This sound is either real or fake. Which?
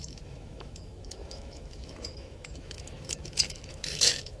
fake